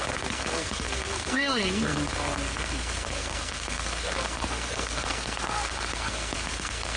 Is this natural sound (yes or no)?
no